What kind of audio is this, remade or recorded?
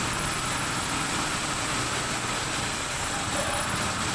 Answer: recorded